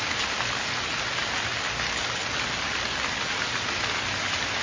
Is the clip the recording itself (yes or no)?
yes